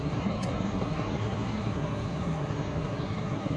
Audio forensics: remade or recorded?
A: remade